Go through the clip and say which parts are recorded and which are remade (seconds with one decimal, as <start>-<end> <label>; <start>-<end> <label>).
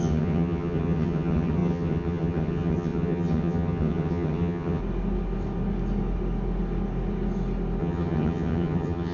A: 0.0-4.8 remade; 4.8-7.8 recorded; 7.8-9.1 remade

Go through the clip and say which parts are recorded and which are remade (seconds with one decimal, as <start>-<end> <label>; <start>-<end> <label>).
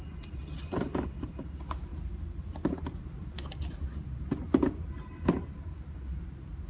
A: 0.0-6.7 recorded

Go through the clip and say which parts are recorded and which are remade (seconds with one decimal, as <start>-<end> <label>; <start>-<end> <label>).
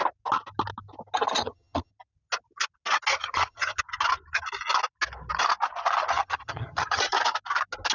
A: 0.0-1.4 recorded; 1.4-1.9 remade; 1.9-3.1 recorded; 3.1-3.8 remade; 3.8-6.1 recorded; 6.1-7.0 remade; 7.0-7.9 recorded